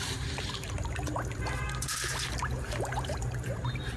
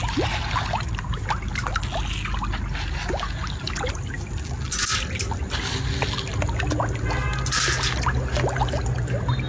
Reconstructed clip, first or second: first